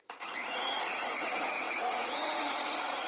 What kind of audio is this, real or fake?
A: fake